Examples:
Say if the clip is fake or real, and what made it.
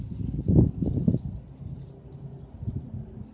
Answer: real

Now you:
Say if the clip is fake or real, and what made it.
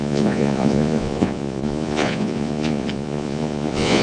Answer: fake, vocoder, Vocos